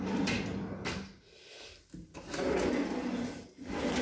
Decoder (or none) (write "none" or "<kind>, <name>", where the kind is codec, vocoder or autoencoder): none